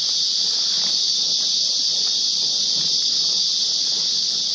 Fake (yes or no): no